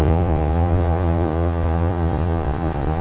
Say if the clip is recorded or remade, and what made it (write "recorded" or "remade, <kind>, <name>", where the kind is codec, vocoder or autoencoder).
remade, vocoder, Vocos